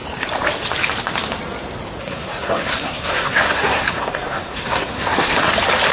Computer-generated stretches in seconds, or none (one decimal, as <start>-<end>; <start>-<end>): 2.0-5.5